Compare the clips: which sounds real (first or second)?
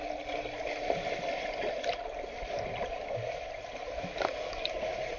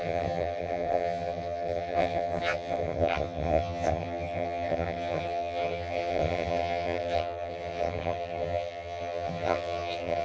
first